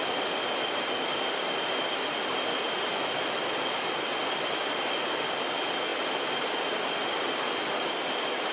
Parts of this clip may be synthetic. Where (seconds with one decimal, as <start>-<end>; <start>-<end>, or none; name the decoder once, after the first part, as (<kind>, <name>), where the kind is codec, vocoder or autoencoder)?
5.9-7.4 (vocoder, BigVGAN v2)